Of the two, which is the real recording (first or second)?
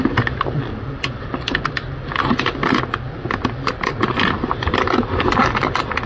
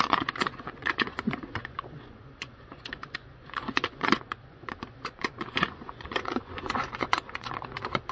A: first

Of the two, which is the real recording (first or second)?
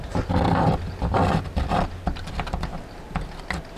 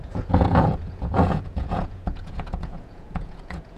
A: first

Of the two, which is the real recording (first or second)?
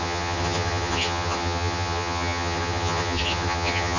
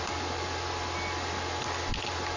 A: second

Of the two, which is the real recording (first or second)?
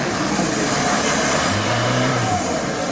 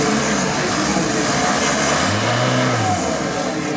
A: second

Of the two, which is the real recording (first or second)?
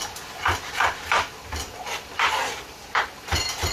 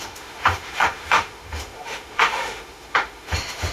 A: first